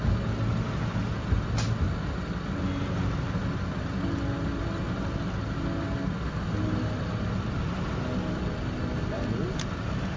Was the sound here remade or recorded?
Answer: recorded